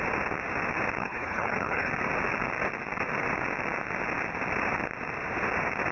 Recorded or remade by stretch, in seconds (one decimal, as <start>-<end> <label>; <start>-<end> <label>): 0.0-1.0 recorded; 1.0-1.9 remade; 1.9-5.9 recorded